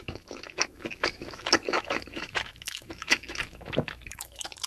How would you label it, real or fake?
fake